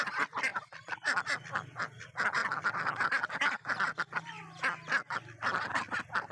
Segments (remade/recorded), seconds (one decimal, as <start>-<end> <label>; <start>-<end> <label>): 0.0-6.3 recorded